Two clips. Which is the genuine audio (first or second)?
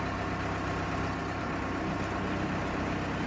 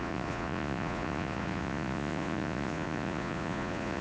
first